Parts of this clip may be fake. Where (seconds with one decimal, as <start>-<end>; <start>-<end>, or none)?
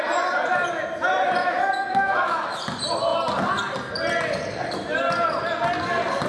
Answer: 1.4-2.6